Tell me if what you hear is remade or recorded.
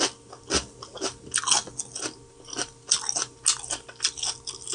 recorded